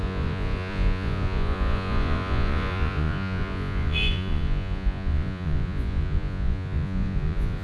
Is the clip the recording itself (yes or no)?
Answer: no